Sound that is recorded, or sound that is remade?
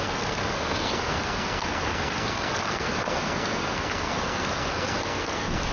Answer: remade